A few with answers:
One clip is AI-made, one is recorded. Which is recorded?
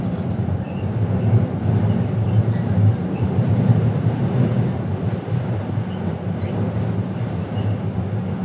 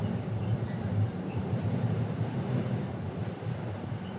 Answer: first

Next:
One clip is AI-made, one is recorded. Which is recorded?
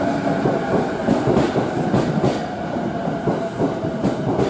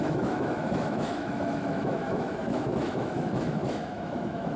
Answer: first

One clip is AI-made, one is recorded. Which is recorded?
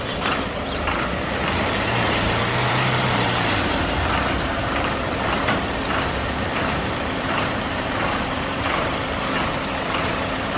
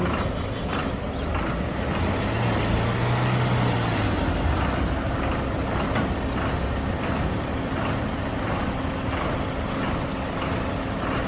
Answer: second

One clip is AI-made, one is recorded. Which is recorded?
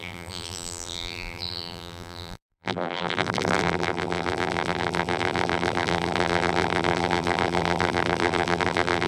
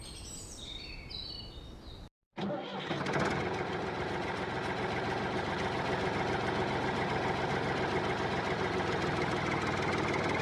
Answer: second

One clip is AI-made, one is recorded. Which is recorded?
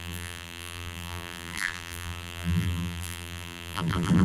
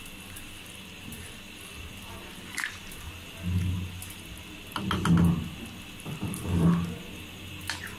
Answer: second